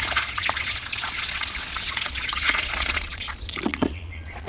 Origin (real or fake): fake